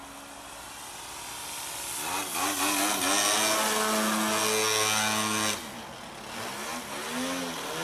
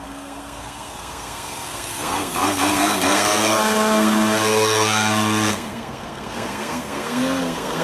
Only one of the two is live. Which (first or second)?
first